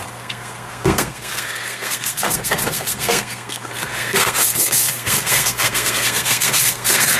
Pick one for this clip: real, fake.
fake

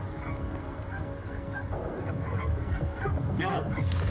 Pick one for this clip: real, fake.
fake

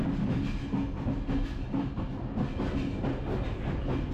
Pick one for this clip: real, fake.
real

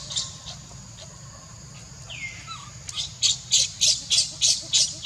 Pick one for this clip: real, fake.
real